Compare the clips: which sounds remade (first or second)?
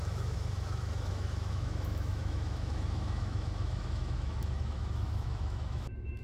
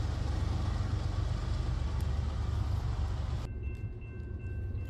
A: first